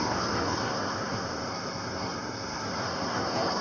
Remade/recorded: remade